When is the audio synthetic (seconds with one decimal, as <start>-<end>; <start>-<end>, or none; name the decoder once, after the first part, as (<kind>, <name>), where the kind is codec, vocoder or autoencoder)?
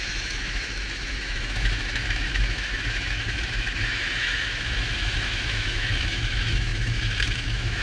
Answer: 0.0-7.8 (autoencoder, DAC-VAE)